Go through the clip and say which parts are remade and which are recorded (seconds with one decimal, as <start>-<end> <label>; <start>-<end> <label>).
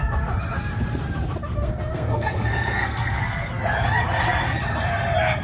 0.0-1.5 recorded; 1.5-3.5 remade; 3.5-5.4 recorded